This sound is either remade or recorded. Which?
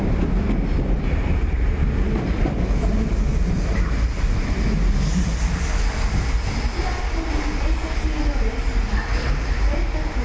recorded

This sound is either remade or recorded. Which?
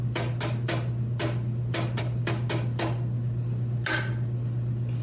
recorded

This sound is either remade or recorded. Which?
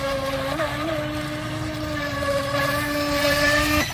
recorded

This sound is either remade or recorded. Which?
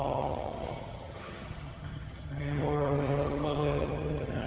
remade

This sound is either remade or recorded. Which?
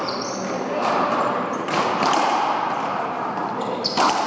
remade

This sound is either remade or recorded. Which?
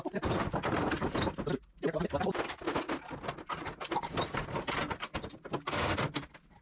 recorded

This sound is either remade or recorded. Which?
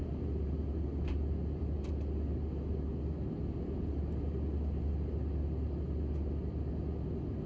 recorded